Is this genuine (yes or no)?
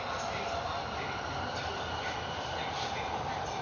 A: yes